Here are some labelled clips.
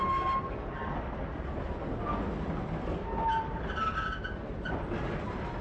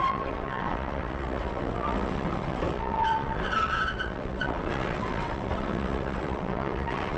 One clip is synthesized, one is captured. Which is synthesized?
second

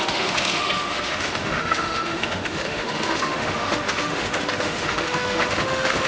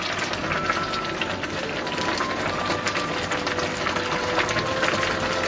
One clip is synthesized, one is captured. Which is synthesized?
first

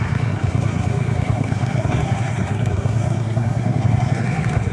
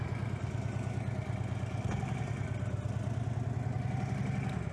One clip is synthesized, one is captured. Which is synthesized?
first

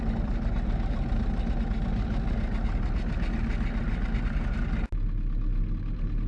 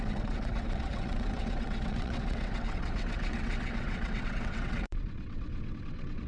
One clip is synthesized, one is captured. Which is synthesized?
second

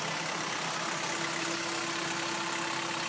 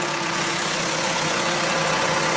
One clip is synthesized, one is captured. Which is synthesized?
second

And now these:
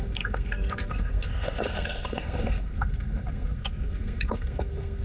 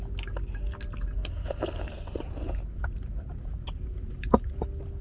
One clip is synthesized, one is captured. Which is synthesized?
first